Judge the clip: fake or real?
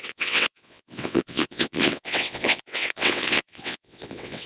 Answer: fake